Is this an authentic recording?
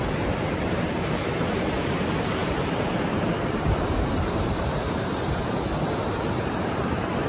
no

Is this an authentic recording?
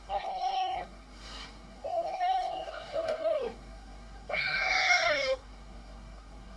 no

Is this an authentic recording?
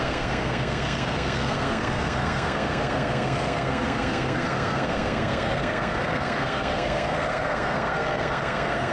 no